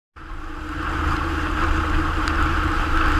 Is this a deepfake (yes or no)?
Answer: no